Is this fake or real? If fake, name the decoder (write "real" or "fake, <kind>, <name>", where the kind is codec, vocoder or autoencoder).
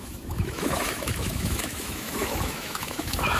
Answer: fake, autoencoder, DAC-VAE